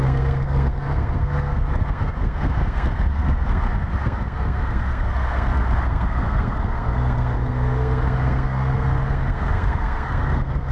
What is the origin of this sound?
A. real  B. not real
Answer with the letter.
B